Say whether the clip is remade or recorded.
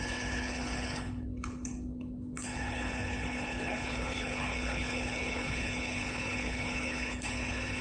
remade